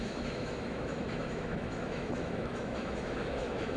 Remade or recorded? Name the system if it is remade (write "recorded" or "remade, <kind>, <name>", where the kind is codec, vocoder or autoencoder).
remade, autoencoder, DAC-VAE